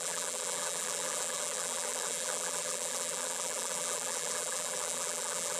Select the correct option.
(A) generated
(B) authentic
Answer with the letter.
A